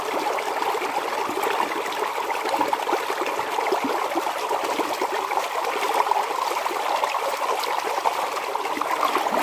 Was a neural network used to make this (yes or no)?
no